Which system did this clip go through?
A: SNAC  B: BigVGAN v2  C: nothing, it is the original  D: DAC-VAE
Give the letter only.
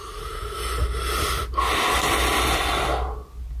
C